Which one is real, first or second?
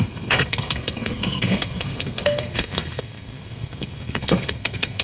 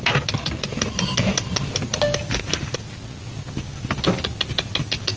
second